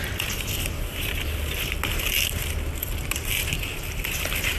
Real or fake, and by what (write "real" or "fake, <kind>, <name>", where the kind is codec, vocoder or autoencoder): real